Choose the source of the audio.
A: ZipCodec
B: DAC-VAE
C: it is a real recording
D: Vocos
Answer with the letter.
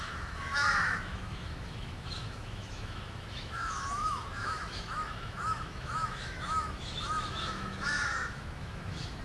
B